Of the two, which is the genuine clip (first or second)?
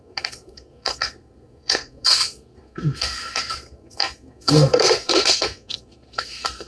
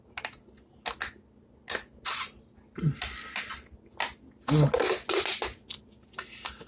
second